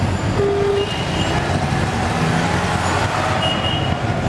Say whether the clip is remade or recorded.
recorded